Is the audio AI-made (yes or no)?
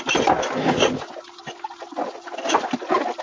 no